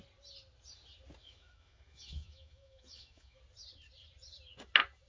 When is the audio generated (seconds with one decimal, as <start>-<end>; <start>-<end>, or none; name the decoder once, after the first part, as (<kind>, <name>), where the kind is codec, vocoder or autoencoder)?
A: 1.2-3.4 (autoencoder, DAC-VAE)